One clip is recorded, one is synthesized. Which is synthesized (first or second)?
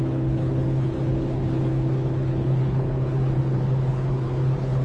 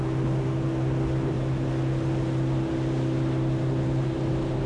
first